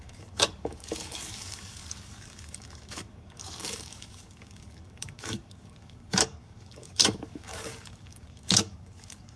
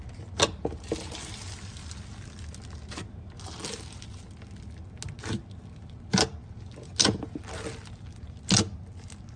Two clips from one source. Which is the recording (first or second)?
second